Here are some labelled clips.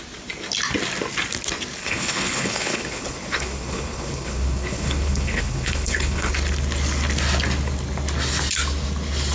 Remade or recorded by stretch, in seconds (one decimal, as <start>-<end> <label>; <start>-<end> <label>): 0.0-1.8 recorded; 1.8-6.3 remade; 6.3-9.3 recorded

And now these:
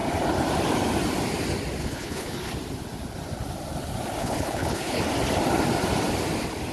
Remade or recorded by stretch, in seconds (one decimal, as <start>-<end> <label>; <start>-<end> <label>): 0.0-1.8 recorded; 1.8-2.5 remade; 2.5-4.2 recorded; 4.2-5.0 remade; 5.0-6.7 recorded

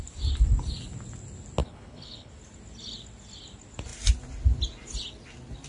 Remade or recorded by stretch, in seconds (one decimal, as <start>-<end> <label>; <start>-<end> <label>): 0.0-1.6 recorded; 1.6-2.3 remade; 2.3-5.7 recorded

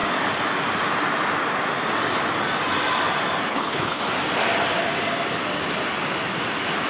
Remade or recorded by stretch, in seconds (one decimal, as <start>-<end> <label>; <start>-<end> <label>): 0.0-3.5 recorded; 3.5-4.0 remade; 4.0-6.9 recorded

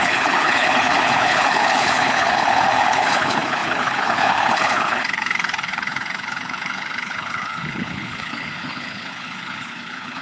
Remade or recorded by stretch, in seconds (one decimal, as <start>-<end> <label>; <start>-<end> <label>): 0.0-10.2 remade

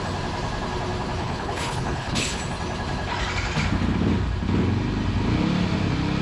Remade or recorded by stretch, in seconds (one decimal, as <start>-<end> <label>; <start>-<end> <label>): 0.0-1.2 recorded; 1.2-2.4 remade; 2.4-6.2 recorded